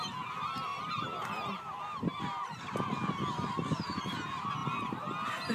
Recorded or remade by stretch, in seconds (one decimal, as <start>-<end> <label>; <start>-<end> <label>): 0.0-5.5 recorded